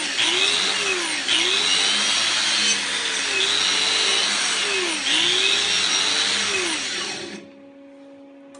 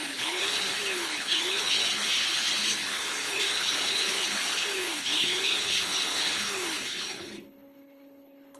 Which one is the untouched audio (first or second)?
first